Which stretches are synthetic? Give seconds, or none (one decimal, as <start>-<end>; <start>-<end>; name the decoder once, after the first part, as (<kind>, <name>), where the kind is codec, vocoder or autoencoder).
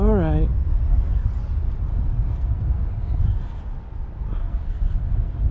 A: 0.6-1.3 (codec, SNAC); 1.9-3.6; 4.4-5.5